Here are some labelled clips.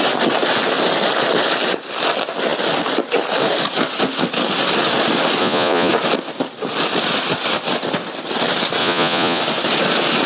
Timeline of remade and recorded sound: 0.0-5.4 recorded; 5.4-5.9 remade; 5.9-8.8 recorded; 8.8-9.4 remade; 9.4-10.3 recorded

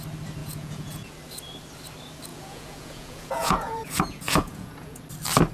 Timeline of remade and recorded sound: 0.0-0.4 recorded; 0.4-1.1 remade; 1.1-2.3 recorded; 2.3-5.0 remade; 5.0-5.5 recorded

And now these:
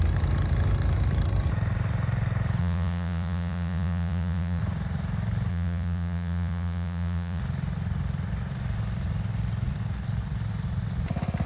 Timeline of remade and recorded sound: 0.0-2.6 recorded; 2.6-4.6 remade; 4.6-5.5 recorded; 5.5-7.4 remade; 7.4-11.5 recorded

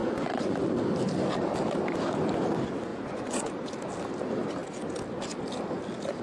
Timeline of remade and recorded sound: 0.0-0.7 remade; 0.7-2.9 recorded; 2.9-3.7 remade; 3.7-6.2 recorded

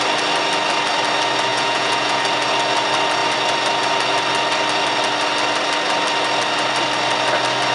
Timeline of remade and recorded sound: 0.0-1.5 recorded; 1.5-2.2 remade; 2.2-7.7 recorded